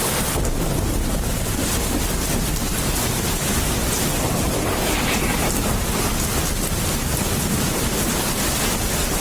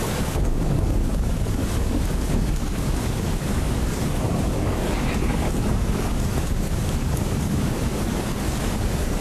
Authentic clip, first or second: first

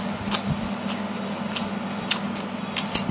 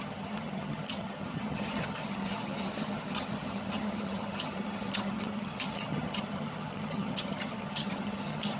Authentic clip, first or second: first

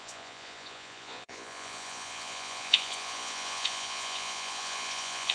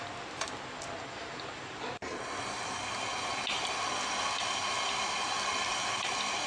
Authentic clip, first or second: second